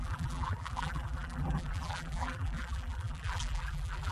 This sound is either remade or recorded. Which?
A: remade